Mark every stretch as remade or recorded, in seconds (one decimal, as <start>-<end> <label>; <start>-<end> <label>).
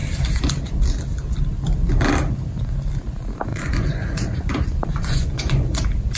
0.0-3.5 recorded; 3.5-4.5 remade; 4.5-4.9 recorded; 4.9-5.8 remade; 5.8-6.2 recorded